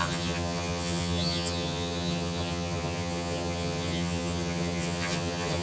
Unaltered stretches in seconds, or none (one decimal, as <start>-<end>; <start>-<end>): none